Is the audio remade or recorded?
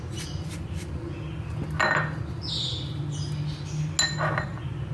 recorded